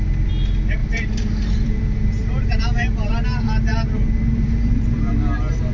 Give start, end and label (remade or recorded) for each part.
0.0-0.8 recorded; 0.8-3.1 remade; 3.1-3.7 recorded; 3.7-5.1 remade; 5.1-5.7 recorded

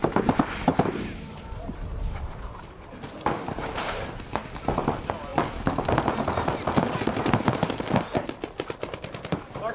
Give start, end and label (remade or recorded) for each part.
0.0-0.7 recorded; 0.7-3.5 remade; 3.5-9.7 recorded

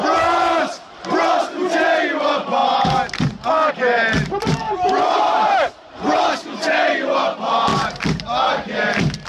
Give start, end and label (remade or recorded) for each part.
0.0-4.6 recorded; 4.6-6.0 remade; 6.0-7.7 recorded; 7.7-8.9 remade; 8.9-9.3 recorded